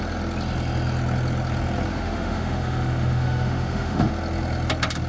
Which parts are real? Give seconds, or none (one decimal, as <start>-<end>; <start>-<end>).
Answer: 0.0-1.9; 4.1-5.1